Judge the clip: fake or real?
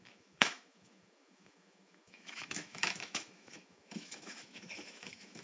fake